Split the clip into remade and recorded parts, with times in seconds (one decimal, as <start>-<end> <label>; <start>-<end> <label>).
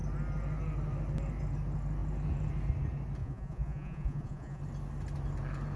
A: 0.0-3.2 recorded; 3.2-4.6 remade; 4.6-5.8 recorded